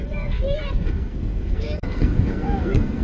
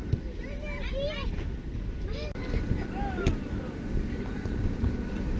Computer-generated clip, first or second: first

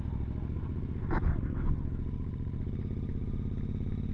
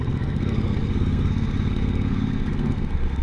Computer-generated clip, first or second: second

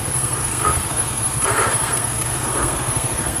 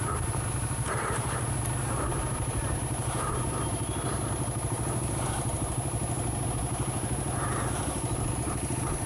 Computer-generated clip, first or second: first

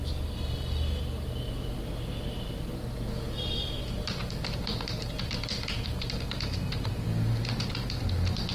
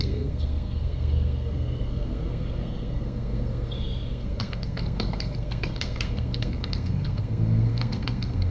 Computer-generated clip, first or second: second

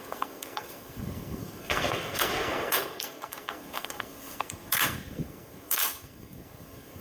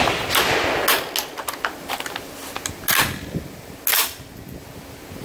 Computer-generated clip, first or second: first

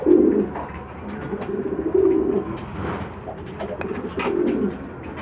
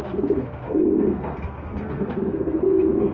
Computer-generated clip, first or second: second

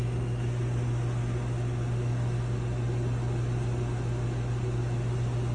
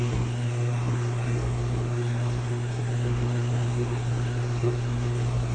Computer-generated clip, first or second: second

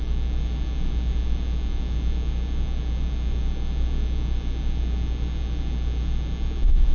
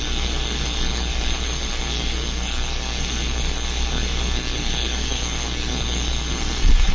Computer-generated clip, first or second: second